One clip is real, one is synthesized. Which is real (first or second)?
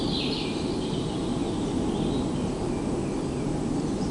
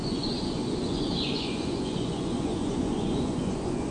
first